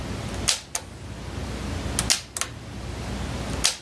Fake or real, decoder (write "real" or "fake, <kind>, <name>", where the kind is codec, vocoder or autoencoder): real